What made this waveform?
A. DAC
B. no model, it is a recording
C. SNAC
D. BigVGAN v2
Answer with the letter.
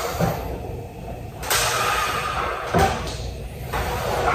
D